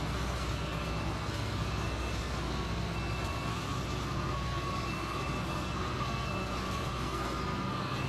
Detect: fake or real fake